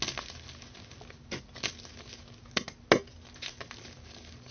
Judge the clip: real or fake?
real